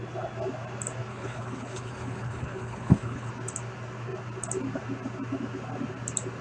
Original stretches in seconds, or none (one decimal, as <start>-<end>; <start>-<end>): 0.0-1.1; 3.3-6.4